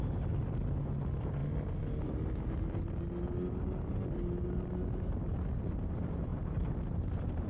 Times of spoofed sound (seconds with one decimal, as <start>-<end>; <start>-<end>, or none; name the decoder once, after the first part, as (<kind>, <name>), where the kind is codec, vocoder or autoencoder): none